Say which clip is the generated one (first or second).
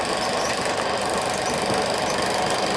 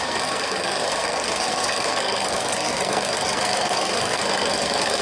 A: second